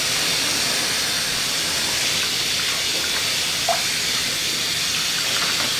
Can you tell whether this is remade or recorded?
recorded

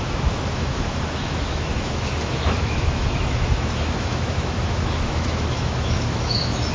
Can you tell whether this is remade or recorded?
remade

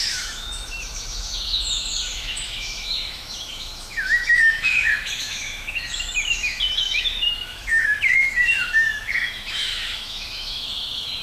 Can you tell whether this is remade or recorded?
remade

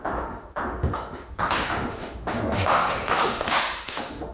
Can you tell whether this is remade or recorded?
remade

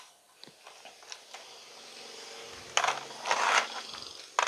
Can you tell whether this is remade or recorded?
recorded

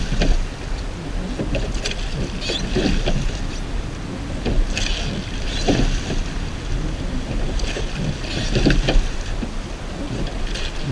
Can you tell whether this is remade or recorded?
recorded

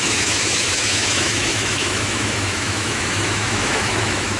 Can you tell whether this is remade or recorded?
remade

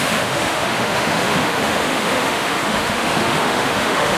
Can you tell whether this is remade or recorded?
remade